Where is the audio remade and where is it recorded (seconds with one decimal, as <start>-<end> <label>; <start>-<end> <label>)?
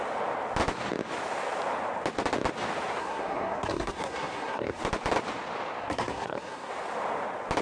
0.0-3.0 recorded; 3.0-4.8 remade; 4.8-5.8 recorded; 5.8-6.7 remade; 6.7-7.6 recorded